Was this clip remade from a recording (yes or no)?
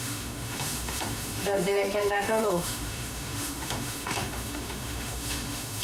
yes